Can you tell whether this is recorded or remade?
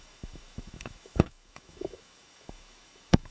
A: remade